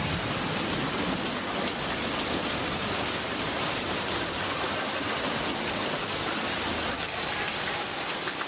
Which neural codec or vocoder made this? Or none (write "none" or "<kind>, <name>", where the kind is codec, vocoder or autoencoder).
none